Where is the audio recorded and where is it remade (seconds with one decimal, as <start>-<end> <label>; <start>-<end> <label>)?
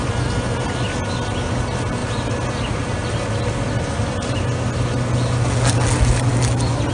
0.0-6.9 recorded